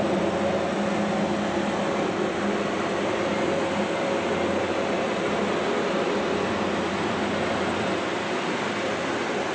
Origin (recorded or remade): recorded